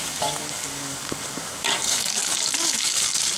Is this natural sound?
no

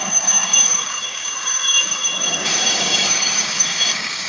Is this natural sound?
no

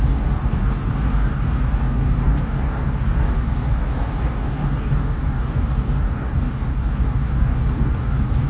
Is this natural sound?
no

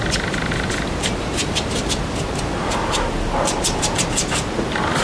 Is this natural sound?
yes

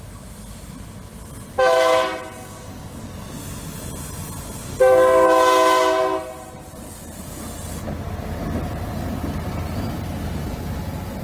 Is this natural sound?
yes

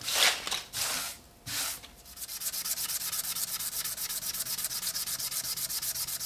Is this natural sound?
yes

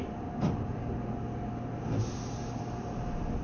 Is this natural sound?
yes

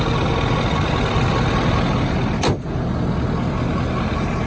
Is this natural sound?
yes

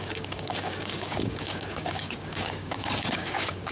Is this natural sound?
no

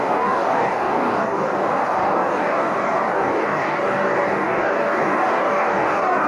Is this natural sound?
no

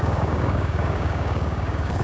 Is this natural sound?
no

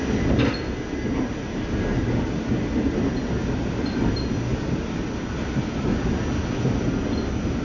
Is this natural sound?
yes